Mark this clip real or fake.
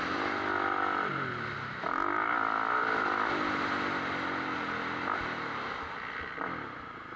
real